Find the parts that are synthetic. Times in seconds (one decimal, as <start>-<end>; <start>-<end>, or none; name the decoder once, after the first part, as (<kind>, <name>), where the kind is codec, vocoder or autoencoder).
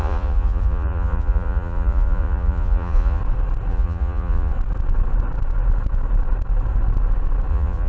0.0-3.2 (vocoder, Vocos); 3.7-4.5; 7.5-7.9